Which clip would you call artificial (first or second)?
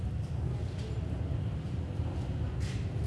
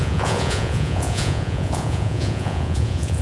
second